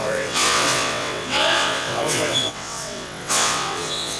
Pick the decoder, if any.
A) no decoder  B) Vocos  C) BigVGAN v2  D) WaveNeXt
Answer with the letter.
D